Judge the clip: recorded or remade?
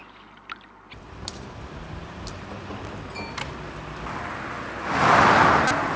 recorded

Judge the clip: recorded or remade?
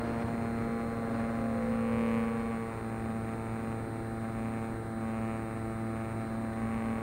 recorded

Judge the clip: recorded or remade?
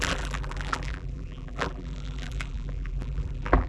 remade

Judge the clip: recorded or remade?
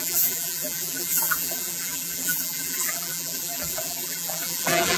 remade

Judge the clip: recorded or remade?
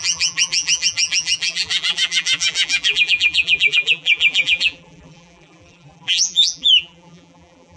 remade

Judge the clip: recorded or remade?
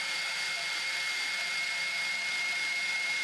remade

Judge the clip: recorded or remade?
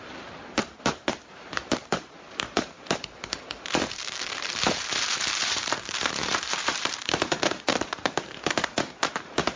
remade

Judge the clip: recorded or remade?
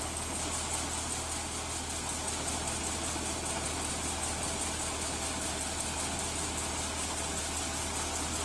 recorded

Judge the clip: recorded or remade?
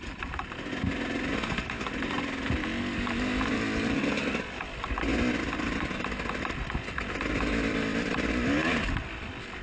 recorded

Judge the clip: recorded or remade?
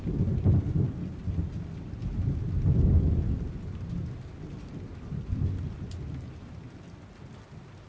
recorded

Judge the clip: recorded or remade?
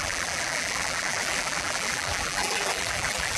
remade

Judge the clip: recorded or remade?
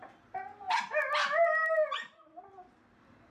recorded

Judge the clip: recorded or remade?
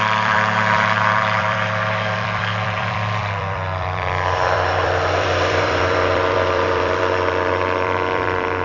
remade